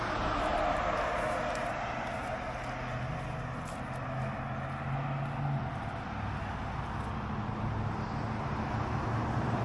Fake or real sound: real